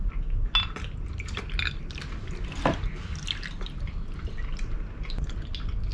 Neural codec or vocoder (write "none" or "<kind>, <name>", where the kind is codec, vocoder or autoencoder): none